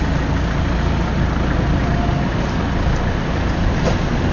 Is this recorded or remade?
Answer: recorded